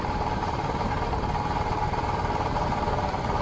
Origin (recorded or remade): remade